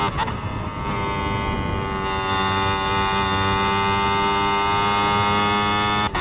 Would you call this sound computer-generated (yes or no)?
no